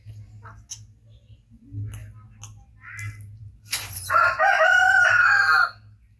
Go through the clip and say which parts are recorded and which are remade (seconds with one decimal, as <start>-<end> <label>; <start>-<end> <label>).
0.0-6.2 recorded